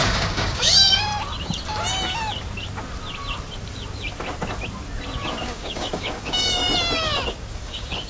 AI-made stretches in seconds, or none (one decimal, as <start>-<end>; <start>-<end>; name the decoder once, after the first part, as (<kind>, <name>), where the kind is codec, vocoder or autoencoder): 0.0-1.1 (codec, DAC); 5.4-6.6; 7.5-8.1